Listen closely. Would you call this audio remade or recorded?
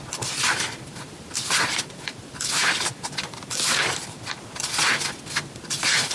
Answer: remade